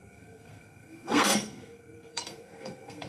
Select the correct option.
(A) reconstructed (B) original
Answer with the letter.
A